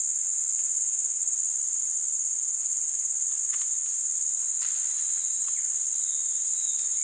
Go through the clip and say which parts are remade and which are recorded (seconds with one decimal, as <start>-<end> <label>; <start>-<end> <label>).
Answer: 0.0-7.0 recorded